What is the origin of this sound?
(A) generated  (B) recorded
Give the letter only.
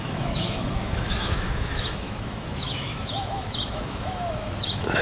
A